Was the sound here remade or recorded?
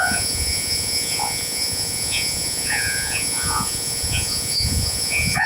remade